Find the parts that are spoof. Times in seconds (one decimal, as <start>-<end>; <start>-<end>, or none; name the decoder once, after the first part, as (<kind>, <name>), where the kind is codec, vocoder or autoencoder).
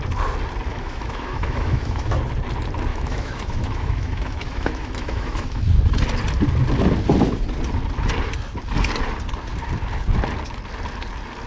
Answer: 0.7-2.2 (autoencoder, DAC-VAE); 2.9-5.6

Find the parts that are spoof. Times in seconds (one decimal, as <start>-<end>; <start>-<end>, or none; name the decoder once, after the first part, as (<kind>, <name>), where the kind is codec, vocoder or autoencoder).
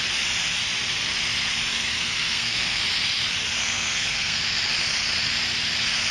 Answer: 1.7-2.8 (codec, SNAC); 3.6-4.4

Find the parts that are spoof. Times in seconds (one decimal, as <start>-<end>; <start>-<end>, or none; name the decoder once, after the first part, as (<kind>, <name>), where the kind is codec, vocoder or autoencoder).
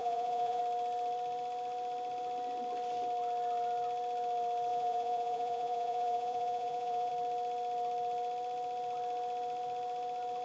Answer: 0.0-0.6 (vocoder, Vocos); 4.7-7.1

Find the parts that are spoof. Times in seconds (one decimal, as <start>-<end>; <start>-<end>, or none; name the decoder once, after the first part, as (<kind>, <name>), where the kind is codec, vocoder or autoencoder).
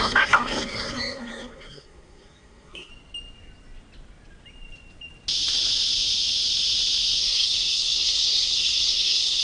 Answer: 0.0-2.9 (codec, SNAC); 7.2-9.4